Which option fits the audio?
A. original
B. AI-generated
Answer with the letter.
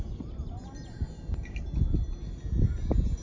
A